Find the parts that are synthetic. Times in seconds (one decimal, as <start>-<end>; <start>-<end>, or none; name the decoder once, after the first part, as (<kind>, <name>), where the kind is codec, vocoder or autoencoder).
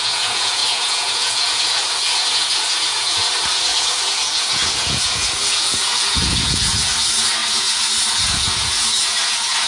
0.0-9.7 (vocoder, Vocos)